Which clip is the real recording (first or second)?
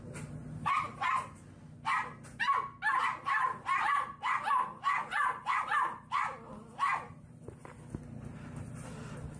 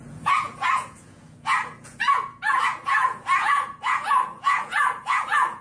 first